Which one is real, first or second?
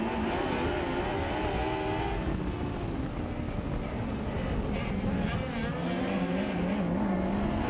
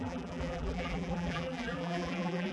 first